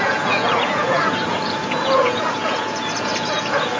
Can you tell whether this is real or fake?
fake